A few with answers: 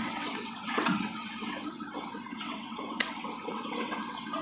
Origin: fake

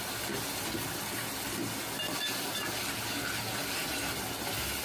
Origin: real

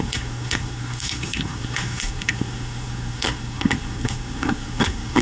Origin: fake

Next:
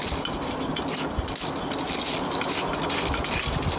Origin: real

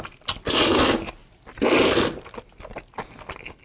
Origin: real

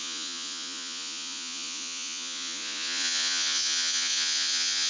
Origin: fake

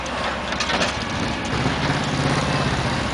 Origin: real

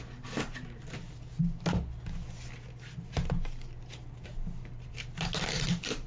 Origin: real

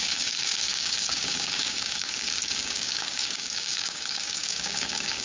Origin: fake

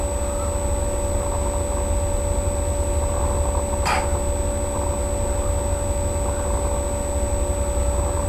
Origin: real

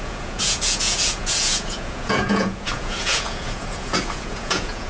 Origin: fake